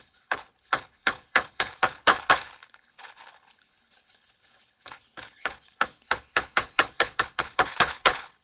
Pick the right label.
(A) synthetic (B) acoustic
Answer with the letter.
A